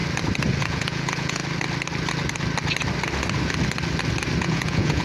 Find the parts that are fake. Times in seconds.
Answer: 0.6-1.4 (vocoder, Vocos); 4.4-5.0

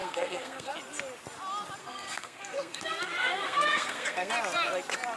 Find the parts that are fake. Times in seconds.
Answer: 0.0-0.7 (codec, SNAC); 1.8-4.3